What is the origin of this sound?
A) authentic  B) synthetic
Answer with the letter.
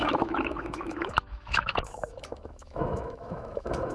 B